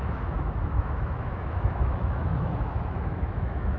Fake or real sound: fake